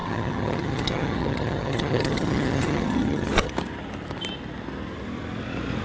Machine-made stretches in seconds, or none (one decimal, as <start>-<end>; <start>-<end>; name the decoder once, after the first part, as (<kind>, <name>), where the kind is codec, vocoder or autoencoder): 0.0-3.5 (vocoder, HiFi-GAN)

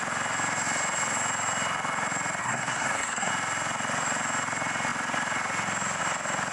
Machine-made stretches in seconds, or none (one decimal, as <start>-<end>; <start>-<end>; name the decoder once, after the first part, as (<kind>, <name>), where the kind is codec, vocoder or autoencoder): 2.4-3.3 (codec, SNAC)

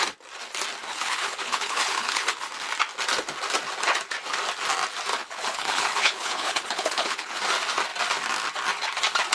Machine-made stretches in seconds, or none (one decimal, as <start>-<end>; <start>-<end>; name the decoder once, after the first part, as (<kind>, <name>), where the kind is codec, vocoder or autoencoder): 0.9-2.4 (codec, HILCodec); 5.1-7.4

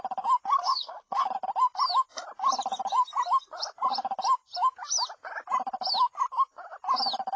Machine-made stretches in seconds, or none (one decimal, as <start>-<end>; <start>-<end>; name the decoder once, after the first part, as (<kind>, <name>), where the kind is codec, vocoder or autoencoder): 0.6-1.3 (codec, HILCodec)

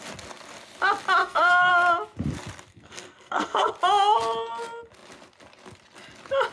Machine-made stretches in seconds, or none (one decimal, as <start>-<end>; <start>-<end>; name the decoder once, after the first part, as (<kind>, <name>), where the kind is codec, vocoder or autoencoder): 1.2-1.7 (codec, SNAC); 2.7-3.7

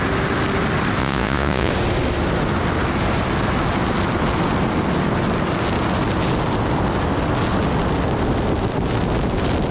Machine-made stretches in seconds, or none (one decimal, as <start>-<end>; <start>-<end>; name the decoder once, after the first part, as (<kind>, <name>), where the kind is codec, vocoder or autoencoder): 1.0-1.7 (vocoder, Vocos)